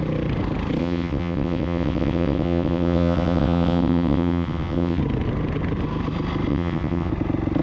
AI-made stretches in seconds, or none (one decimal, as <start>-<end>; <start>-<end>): 0.8-5.0; 6.5-7.1